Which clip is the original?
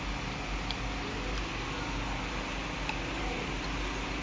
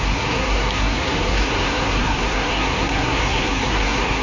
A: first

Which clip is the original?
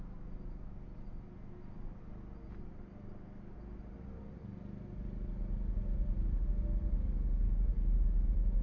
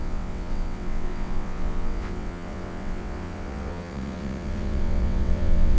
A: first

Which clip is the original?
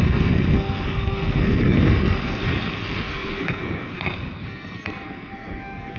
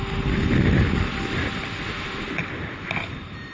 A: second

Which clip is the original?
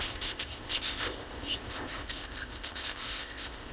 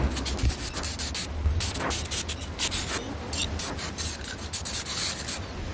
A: second